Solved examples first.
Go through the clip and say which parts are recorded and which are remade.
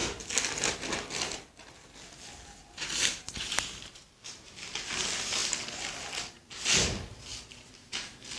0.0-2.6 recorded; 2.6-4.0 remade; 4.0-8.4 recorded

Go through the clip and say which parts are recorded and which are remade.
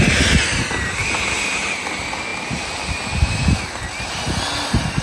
0.0-5.0 recorded